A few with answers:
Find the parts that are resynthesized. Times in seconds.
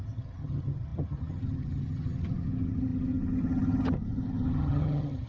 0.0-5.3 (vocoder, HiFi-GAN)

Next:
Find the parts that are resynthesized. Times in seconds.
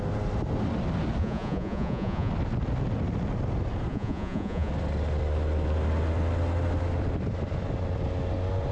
1.2-2.3 (vocoder, Vocos); 3.9-4.7